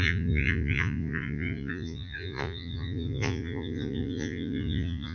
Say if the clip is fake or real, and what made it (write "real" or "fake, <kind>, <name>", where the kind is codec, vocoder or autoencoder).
fake, vocoder, Vocos